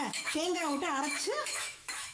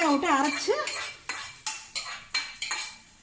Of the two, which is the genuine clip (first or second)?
second